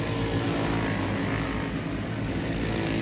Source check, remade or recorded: recorded